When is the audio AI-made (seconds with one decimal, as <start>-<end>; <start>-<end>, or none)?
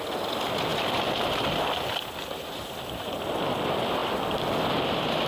none